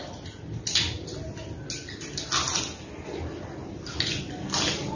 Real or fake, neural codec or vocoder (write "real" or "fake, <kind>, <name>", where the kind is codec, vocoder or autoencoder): real